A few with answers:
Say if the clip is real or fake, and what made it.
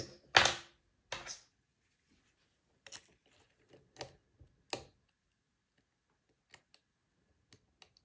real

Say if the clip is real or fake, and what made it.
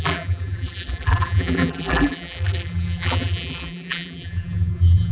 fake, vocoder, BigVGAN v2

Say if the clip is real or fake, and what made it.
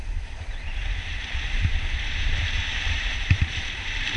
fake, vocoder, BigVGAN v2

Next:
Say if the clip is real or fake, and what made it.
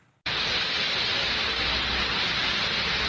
real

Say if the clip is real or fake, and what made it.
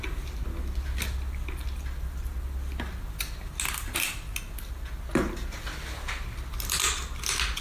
real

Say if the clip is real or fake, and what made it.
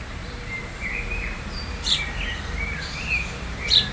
fake, vocoder, BigVGAN v2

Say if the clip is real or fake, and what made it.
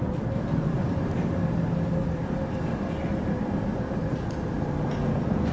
real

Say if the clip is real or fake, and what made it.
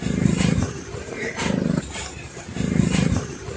fake, vocoder, BigVGAN v2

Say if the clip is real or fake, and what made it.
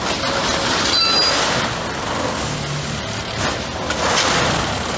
real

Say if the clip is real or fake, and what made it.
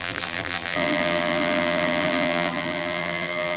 fake, vocoder, BigVGAN v2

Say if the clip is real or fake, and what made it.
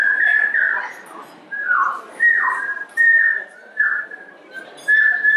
fake, vocoder, BigVGAN v2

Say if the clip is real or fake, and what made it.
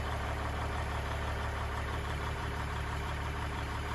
fake, vocoder, BigVGAN v2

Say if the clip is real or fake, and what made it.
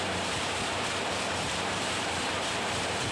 fake, vocoder, BigVGAN v2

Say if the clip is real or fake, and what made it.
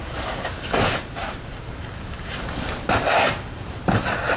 fake, vocoder, BigVGAN v2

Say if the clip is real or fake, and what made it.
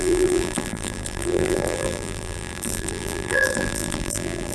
fake, vocoder, BigVGAN v2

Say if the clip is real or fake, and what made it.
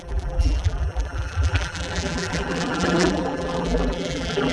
fake, vocoder, BigVGAN v2